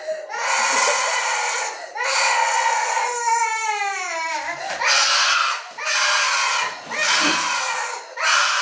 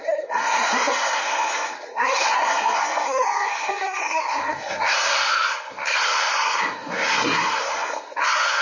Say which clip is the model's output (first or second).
second